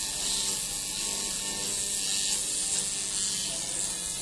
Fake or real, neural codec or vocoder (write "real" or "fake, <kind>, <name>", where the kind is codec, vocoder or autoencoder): real